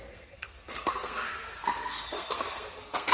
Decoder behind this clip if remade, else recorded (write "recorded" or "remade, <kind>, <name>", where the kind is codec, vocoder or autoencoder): remade, codec, SNAC